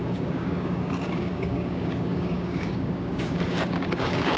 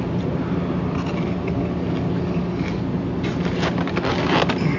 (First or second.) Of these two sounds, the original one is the second